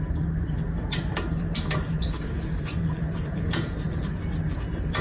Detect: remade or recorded remade